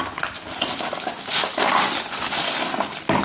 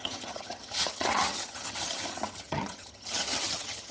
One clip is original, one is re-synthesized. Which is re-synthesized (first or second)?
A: second